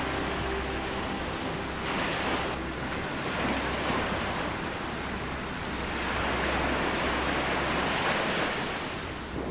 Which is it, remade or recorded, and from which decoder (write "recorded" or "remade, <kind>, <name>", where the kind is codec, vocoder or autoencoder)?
recorded